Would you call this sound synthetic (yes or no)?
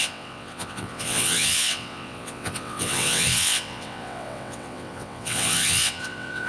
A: yes